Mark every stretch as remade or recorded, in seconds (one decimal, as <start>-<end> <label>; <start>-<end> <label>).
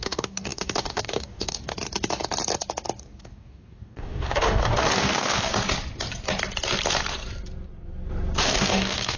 0.0-1.7 remade; 1.7-3.0 recorded; 3.0-5.5 remade; 5.5-8.4 recorded; 8.4-9.2 remade